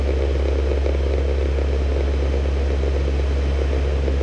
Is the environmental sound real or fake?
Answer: real